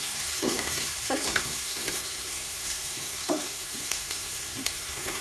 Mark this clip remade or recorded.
remade